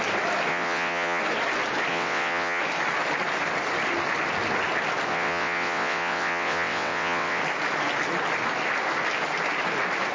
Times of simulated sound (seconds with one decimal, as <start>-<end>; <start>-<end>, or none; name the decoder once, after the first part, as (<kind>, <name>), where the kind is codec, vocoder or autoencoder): 0.5-1.2 (vocoder, WaveNeXt); 1.9-2.6; 5.1-7.4